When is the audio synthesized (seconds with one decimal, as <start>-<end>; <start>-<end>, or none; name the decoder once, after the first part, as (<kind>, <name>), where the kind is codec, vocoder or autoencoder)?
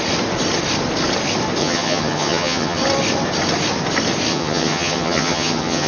1.6-2.8 (vocoder, HiFi-GAN); 4.3-5.9